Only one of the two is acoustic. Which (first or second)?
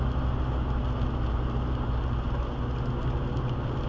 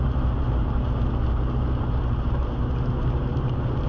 first